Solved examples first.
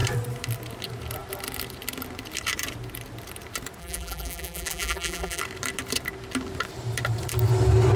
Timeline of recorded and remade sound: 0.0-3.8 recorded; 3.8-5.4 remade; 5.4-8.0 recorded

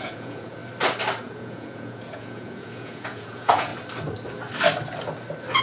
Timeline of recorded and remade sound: 0.0-0.6 remade; 0.6-1.2 recorded; 1.2-3.7 remade; 3.7-5.6 recorded

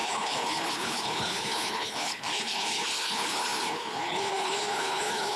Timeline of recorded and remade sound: 0.0-5.4 remade

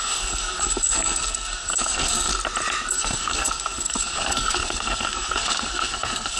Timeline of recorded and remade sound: 0.0-2.3 remade; 2.3-2.9 recorded; 2.9-6.4 remade

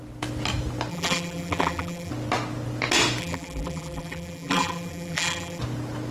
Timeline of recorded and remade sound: 0.0-0.9 recorded; 0.9-2.1 remade; 2.1-3.2 recorded; 3.2-5.6 remade; 5.6-6.1 recorded

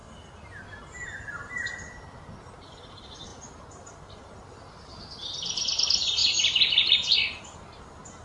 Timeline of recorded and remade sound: 0.0-8.2 recorded